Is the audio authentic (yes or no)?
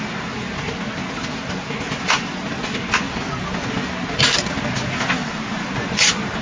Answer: yes